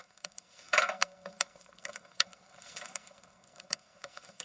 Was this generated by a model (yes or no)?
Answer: yes